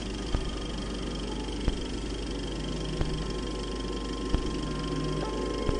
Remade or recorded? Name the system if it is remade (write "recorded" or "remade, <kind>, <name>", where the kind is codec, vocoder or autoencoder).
recorded